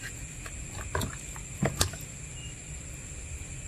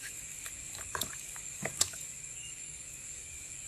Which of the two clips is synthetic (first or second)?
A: second